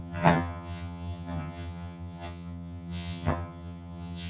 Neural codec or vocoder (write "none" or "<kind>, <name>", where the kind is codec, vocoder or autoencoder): vocoder, HiFi-GAN